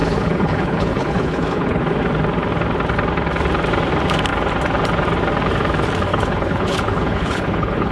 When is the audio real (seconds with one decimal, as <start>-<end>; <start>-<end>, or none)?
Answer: 1.8-6.1